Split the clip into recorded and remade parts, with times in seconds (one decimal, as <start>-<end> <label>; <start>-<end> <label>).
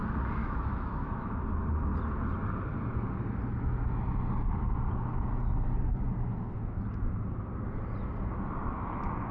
0.0-0.4 recorded; 0.4-1.4 remade; 1.4-9.3 recorded